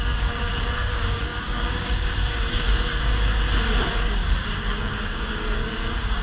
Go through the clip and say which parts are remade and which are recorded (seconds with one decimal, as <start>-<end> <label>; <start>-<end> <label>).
0.0-3.3 remade; 3.3-3.8 recorded; 3.8-6.2 remade